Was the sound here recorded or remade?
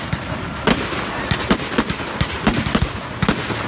recorded